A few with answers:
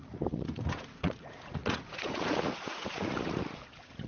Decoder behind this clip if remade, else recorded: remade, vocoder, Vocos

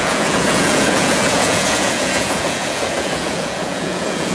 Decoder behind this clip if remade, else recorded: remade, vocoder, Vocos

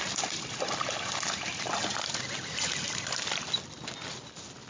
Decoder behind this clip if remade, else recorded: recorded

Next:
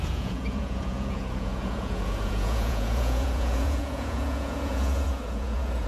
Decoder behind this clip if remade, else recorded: remade, vocoder, Vocos